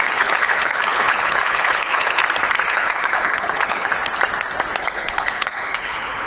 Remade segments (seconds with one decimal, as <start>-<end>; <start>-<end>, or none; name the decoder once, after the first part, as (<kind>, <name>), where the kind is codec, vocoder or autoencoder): 0.0-2.2 (codec, HILCodec); 2.7-3.9; 4.8-6.3